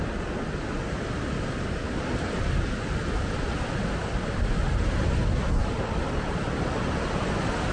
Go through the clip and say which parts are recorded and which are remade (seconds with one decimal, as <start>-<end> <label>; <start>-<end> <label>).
0.0-7.7 recorded

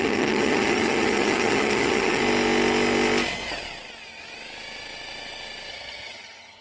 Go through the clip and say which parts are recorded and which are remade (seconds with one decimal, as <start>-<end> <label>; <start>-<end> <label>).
0.0-2.2 remade; 2.2-5.7 recorded; 5.7-6.6 remade

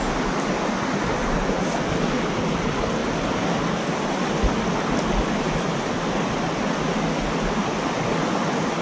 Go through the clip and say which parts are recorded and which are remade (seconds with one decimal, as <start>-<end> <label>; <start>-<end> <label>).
0.0-8.8 recorded

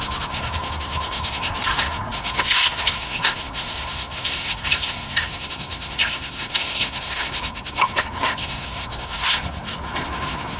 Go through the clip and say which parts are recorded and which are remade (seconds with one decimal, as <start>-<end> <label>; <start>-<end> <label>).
0.0-10.6 remade

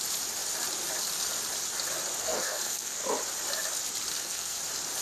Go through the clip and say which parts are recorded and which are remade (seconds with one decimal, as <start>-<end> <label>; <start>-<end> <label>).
0.0-2.2 recorded; 2.2-3.0 remade; 3.0-4.1 recorded; 4.1-4.6 remade; 4.6-5.0 recorded